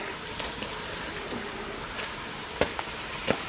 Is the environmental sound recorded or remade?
recorded